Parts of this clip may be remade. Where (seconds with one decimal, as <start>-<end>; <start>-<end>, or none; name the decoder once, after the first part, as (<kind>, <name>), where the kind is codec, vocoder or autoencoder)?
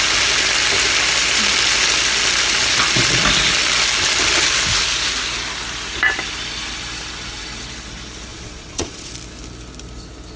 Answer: 8.3-9.1 (vocoder, Vocos)